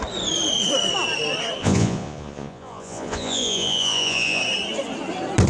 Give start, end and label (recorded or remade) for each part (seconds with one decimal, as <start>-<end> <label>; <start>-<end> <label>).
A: 0.0-1.6 recorded; 1.6-4.4 remade; 4.4-5.5 recorded